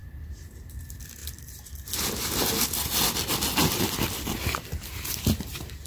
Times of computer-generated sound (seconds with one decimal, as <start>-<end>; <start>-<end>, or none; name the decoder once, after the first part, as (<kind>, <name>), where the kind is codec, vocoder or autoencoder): none